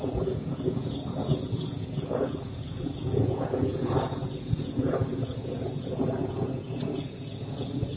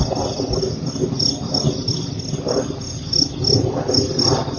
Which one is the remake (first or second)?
first